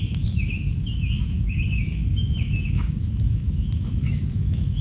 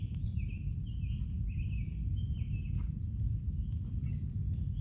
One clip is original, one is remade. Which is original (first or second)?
second